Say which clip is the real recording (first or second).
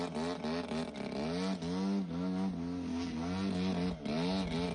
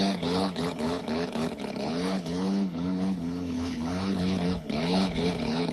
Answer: first